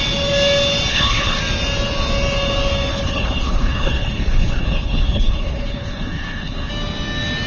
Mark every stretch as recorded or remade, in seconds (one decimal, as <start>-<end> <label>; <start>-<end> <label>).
0.0-0.9 recorded; 0.9-1.4 remade; 1.4-2.9 recorded; 2.9-6.7 remade; 6.7-7.5 recorded